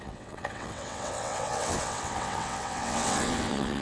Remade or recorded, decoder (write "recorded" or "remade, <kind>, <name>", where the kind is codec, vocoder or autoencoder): remade, vocoder, WaveNeXt